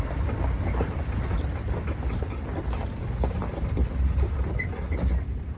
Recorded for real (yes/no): no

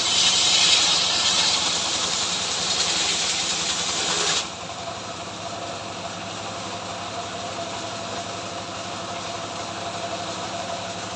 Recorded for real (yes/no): no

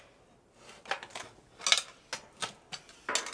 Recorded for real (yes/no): yes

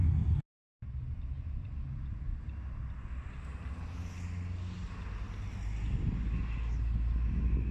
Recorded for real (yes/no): yes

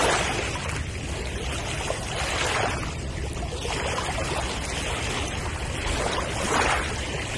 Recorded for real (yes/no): yes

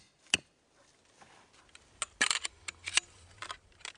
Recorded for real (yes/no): yes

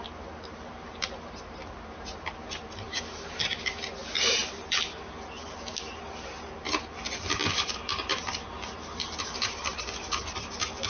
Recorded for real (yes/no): no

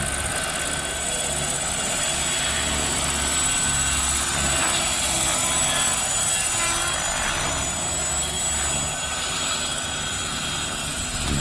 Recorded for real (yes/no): yes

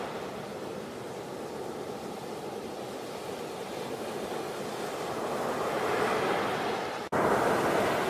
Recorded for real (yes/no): yes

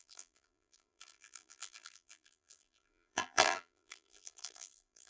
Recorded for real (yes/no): no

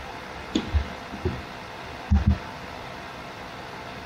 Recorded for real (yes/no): yes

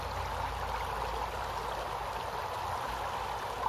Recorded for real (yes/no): yes